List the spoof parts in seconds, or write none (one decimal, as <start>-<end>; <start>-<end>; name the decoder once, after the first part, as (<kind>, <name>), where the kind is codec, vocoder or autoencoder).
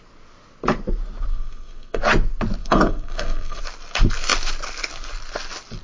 1.3-2.0 (codec, SNAC); 2.6-3.6